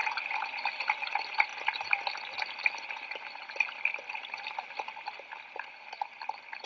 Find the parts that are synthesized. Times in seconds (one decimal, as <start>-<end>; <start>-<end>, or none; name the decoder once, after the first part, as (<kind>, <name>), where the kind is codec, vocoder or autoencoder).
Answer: none